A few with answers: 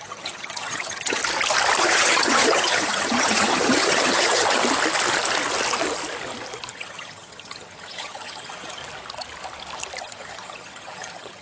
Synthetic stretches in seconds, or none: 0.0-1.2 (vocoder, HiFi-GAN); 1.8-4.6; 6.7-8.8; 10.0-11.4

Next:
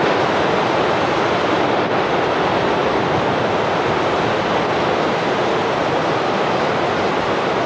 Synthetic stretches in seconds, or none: none

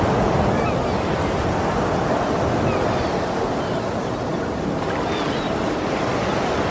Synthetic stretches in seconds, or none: none